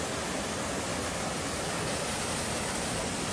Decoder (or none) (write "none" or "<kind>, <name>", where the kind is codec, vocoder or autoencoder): none